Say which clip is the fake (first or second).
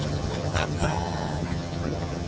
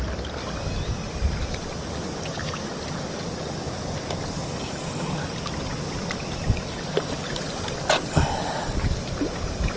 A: first